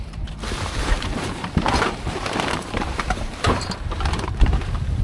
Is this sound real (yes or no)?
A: no